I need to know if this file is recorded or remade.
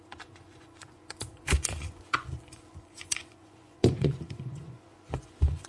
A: remade